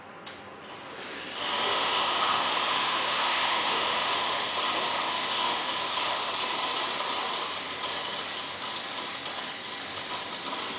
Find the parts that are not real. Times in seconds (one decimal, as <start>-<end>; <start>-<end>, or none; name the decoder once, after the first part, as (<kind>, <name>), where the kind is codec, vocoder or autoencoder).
1.7-4.5 (autoencoder, DAC-VAE); 4.9-6.3